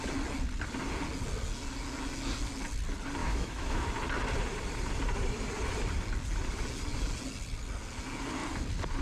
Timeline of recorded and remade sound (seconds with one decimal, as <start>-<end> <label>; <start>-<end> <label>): 0.0-3.2 recorded; 3.2-3.9 remade; 3.9-9.0 recorded